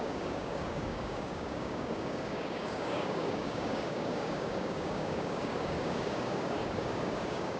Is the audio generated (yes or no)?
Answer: yes